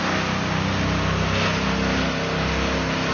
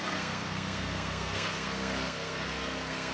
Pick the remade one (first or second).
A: second